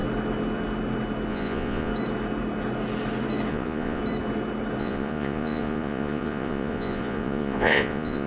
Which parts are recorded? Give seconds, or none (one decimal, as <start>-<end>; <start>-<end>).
0.0-1.3; 1.9-3.5; 4.0-4.8